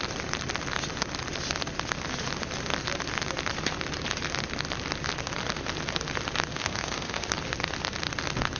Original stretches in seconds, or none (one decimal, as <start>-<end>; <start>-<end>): 0.0-6.5; 7.3-8.6